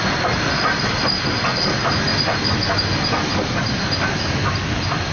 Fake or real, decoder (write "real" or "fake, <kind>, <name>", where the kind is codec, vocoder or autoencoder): real